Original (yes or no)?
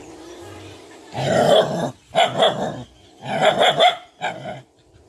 no